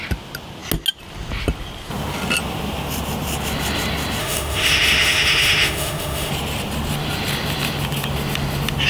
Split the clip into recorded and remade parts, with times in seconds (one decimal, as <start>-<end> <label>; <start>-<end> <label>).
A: 0.0-4.2 recorded; 4.2-6.3 remade; 6.3-8.9 recorded